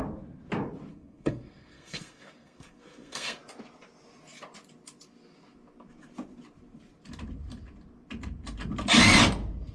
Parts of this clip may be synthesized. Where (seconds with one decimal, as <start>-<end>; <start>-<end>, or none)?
0.9-3.4